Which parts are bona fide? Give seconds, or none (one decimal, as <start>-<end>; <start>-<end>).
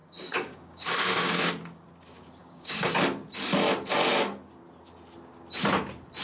1.5-2.4; 2.9-6.2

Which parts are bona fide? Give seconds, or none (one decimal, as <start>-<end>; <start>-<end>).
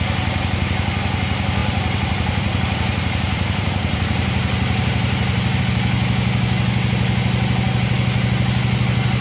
0.0-1.6; 5.6-9.2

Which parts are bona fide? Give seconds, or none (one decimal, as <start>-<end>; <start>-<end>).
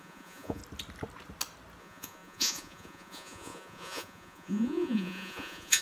0.6-1.8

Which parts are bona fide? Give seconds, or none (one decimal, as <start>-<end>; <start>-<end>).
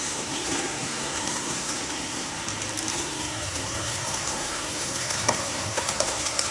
2.3-2.9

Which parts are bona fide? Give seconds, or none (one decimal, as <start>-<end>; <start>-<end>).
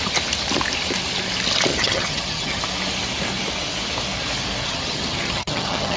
0.0-1.7; 2.6-4.6